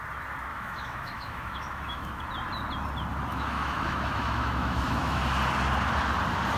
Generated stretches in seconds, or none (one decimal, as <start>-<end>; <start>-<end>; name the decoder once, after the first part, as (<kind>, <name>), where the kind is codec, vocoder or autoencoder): 0.5-2.2 (autoencoder, DAC-VAE); 3.3-5.2